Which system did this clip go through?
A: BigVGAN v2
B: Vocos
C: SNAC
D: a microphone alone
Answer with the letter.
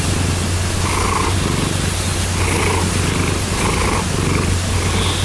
D